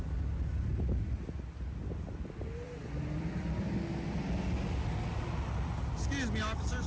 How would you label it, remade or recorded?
recorded